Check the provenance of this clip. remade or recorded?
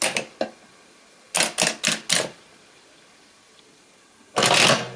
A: recorded